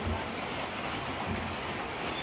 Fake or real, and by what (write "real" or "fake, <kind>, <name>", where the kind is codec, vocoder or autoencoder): real